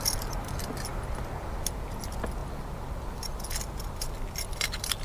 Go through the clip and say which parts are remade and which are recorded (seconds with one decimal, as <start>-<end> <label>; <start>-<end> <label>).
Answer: 0.0-5.0 recorded